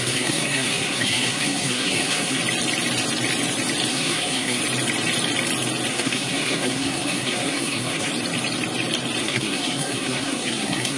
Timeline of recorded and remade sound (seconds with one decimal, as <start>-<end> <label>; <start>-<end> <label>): 0.0-2.4 remade; 2.4-3.9 recorded; 3.9-4.6 remade; 4.6-5.9 recorded; 5.9-8.1 remade; 8.1-9.2 recorded; 9.2-11.0 remade